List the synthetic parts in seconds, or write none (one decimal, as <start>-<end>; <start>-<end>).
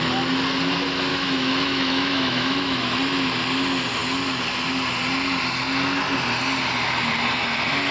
1.1-3.0